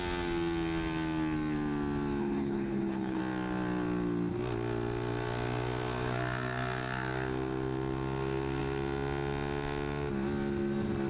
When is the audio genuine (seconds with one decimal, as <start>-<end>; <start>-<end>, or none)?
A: 0.0-2.2; 3.2-11.1